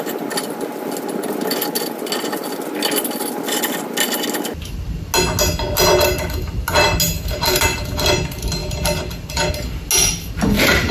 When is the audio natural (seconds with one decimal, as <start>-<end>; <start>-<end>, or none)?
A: 0.0-10.9